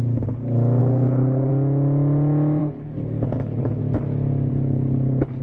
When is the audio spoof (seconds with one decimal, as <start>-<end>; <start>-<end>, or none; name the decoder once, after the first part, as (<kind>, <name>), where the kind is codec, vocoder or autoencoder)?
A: 0.8-1.5 (codec, HILCodec); 2.6-3.8; 4.5-5.4